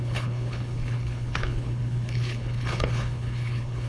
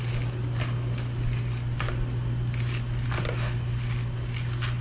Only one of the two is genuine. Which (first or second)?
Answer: second